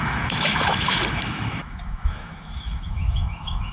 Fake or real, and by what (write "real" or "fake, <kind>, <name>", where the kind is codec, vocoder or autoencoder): fake, autoencoder, DAC-VAE